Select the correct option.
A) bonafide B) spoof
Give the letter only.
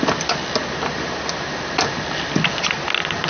A